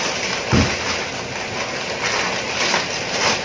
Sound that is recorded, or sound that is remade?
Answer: recorded